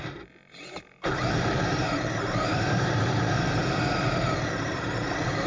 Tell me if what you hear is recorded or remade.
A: remade